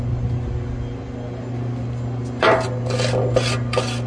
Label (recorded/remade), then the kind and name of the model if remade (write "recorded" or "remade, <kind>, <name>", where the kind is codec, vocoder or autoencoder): recorded